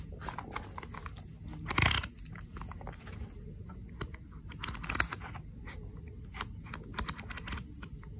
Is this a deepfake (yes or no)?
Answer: no